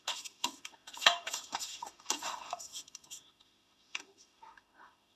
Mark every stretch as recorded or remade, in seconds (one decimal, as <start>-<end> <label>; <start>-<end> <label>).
0.0-5.2 remade

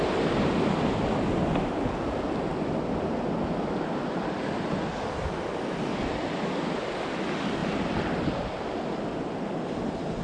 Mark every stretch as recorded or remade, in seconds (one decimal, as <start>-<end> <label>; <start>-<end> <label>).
0.0-10.2 recorded

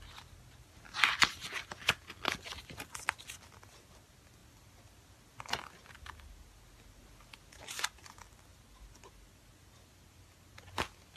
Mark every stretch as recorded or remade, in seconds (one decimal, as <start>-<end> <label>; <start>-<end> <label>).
0.0-11.2 recorded